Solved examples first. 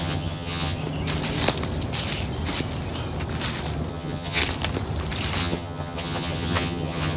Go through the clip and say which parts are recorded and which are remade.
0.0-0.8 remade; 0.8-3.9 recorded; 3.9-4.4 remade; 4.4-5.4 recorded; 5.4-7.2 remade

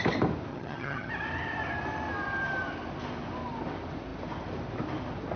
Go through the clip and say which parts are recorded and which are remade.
0.0-0.5 recorded; 0.5-1.1 remade; 1.1-5.4 recorded

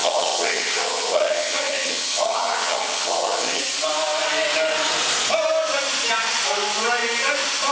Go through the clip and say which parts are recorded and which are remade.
0.0-3.6 remade; 3.6-7.7 recorded